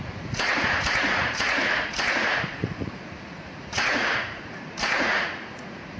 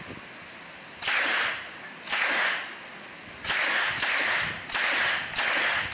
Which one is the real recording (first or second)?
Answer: second